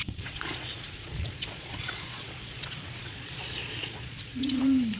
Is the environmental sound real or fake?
fake